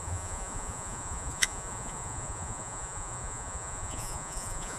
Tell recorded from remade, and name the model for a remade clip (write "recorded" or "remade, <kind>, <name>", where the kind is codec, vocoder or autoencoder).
remade, vocoder, Vocos